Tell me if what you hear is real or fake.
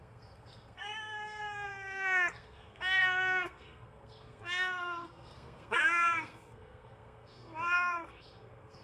fake